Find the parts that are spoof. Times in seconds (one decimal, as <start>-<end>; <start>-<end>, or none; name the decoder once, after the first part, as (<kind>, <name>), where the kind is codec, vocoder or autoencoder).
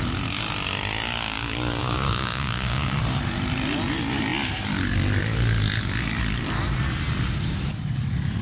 1.8-3.0 (codec, DAC)